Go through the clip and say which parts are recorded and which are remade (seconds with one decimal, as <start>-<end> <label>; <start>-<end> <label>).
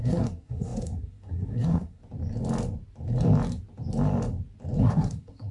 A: 0.0-2.0 remade; 2.0-4.8 recorded; 4.8-5.5 remade